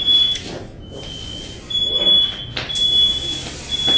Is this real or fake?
real